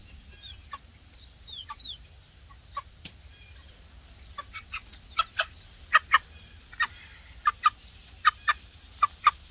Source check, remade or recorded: recorded